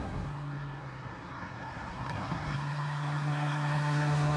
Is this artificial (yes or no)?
yes